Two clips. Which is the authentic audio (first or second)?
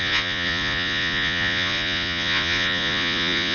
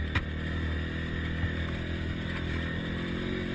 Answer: second